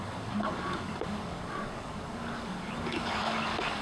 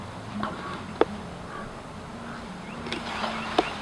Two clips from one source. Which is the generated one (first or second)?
first